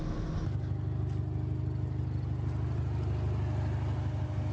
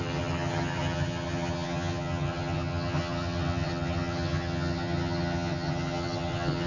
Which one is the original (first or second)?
first